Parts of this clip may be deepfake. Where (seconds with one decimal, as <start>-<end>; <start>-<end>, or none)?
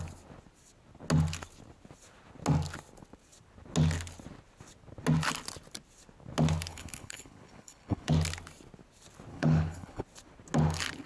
6.7-8.1; 9.3-10.0